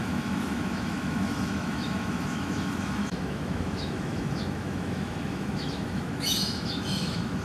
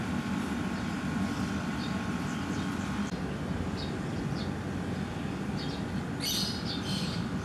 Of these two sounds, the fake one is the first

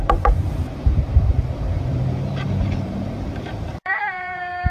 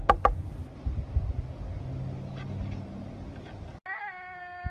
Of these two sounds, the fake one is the first